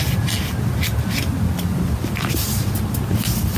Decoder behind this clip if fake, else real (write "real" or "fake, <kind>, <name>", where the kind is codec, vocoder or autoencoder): real